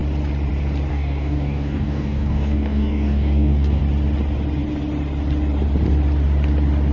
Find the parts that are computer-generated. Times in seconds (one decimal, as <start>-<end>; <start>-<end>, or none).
0.9-3.8